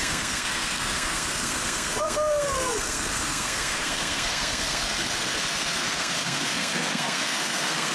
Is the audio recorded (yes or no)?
no